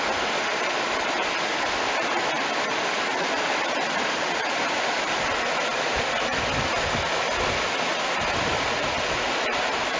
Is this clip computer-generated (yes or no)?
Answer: no